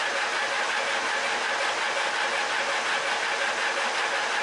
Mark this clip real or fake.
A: real